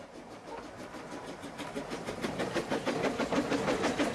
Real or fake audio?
real